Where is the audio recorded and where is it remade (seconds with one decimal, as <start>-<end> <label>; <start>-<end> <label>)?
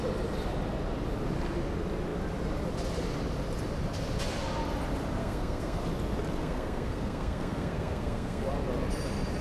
0.0-5.2 recorded; 5.2-5.8 remade; 5.8-6.4 recorded; 6.4-8.5 remade; 8.5-9.4 recorded